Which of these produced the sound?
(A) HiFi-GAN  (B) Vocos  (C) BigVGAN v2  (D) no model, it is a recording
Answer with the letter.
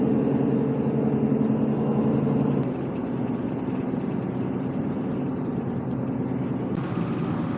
D